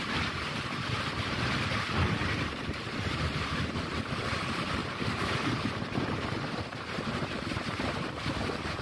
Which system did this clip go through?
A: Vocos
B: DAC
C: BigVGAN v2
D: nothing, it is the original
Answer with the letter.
C